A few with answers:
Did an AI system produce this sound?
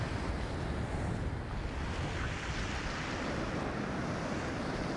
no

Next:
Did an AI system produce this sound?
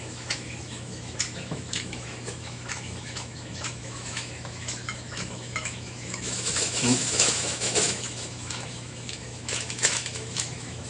yes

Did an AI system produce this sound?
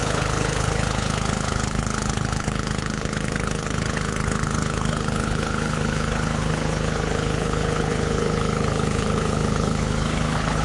yes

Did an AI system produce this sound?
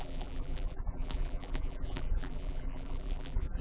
yes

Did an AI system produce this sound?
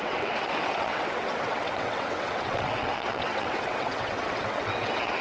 yes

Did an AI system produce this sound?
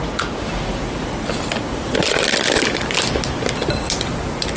no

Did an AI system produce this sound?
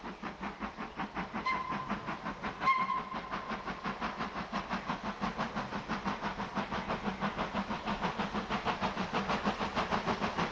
no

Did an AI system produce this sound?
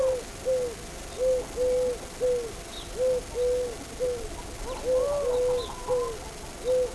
no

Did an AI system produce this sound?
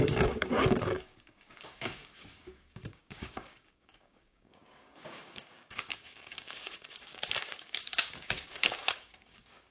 yes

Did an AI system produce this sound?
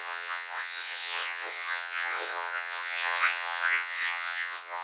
yes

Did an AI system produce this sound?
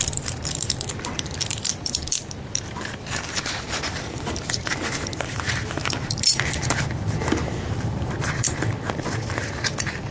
yes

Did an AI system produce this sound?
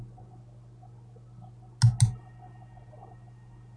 no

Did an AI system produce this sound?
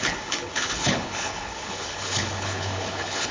yes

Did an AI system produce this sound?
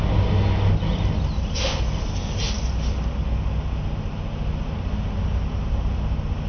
no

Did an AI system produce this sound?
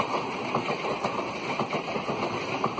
no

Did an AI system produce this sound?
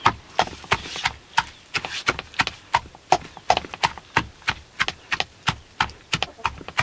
no